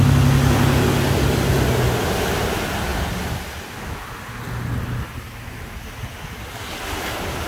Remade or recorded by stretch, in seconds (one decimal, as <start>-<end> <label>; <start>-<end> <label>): 0.0-7.5 recorded